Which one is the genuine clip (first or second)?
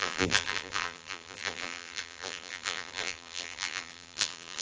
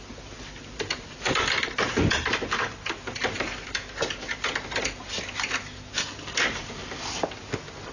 second